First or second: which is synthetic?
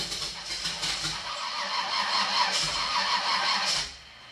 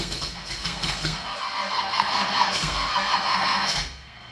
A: second